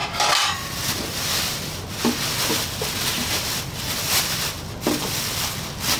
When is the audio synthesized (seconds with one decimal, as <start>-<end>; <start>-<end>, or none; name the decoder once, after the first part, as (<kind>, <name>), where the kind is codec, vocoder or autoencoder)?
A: none